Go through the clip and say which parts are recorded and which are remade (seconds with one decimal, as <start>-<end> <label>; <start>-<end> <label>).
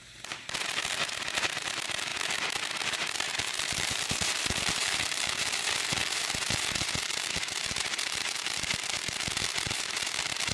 0.0-2.1 remade; 2.1-2.9 recorded; 2.9-10.5 remade